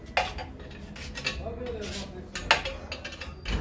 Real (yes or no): yes